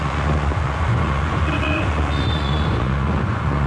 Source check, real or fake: fake